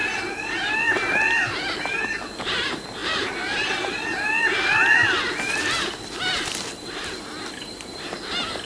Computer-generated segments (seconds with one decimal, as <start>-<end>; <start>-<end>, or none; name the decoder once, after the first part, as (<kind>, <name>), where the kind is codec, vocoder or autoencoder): none